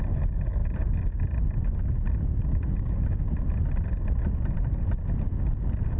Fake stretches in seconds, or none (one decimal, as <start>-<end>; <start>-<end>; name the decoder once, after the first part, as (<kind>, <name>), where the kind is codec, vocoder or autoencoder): none

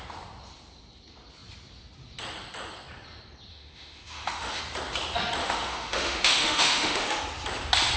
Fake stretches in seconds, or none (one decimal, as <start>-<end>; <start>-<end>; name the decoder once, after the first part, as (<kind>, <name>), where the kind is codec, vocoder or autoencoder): 3.5-4.6 (autoencoder, DAC-VAE); 5.4-7.2

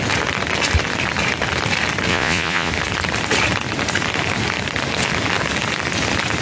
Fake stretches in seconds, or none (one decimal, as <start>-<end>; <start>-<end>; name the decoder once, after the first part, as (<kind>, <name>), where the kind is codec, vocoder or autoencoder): 2.1-2.7 (vocoder, Vocos)

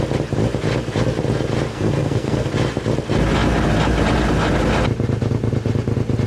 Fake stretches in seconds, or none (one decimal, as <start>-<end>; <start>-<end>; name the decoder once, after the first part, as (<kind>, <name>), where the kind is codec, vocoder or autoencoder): 1.7-2.5 (codec, SNAC)